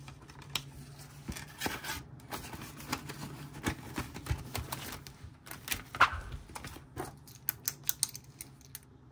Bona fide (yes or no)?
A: yes